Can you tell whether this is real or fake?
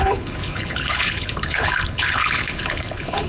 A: fake